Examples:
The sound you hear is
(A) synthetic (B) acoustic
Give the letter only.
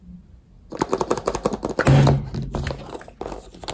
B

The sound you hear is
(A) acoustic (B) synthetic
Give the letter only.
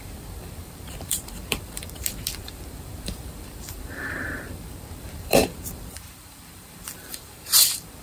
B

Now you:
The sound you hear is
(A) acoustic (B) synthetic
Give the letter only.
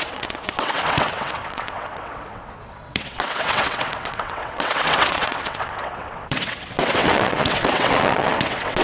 B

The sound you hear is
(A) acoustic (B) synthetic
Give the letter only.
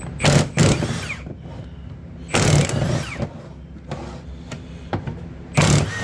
A